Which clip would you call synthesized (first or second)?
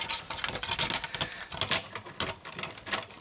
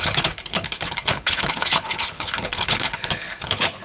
second